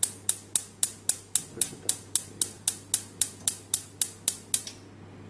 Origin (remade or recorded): recorded